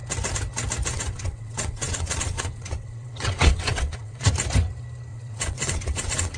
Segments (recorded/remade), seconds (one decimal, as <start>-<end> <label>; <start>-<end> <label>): 0.0-0.9 recorded; 0.9-4.3 remade; 4.3-5.1 recorded; 5.1-6.4 remade

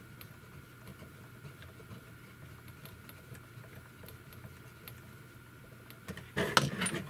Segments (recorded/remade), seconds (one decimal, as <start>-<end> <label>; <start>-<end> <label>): 0.0-7.1 recorded

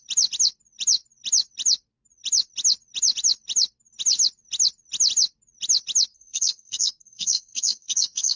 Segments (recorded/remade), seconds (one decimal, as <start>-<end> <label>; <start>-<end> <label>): 0.0-6.1 recorded; 6.1-8.4 remade

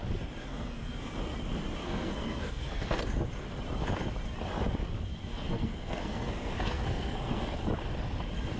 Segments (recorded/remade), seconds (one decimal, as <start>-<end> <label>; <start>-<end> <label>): 0.0-0.5 recorded; 0.5-1.2 remade; 1.2-1.8 recorded; 1.8-3.2 remade; 3.2-5.3 recorded; 5.3-7.4 remade; 7.4-8.6 recorded

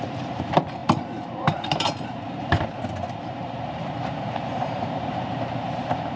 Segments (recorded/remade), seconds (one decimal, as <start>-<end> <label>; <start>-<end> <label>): 0.0-6.2 remade